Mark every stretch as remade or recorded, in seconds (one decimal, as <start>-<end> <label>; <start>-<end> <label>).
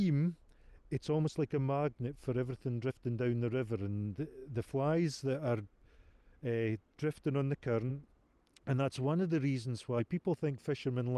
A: 0.0-11.2 recorded